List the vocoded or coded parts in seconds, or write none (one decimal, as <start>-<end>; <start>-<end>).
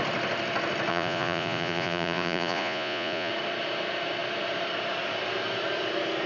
0.9-3.3